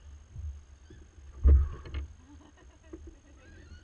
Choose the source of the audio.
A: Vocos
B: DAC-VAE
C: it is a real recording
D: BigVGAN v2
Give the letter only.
C